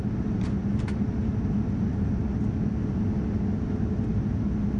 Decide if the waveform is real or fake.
real